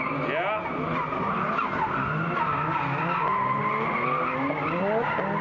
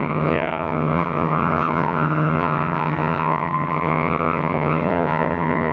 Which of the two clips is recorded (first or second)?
first